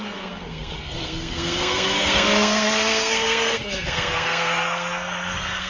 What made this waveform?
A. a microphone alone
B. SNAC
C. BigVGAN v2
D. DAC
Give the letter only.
B